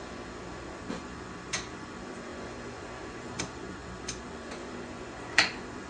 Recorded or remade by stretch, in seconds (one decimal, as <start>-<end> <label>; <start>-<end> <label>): 0.0-5.9 remade